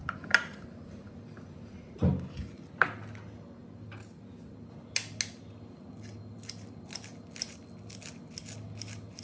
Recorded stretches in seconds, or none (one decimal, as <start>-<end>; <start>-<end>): 0.0-9.2